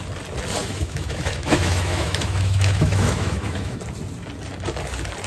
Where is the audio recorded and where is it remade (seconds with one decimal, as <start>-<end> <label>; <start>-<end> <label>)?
0.0-0.6 recorded; 0.6-3.8 remade; 3.8-5.3 recorded